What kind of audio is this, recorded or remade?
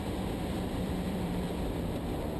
remade